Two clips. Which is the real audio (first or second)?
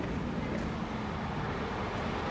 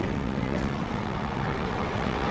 first